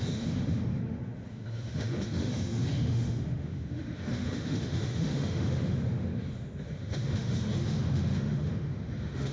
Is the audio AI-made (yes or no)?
yes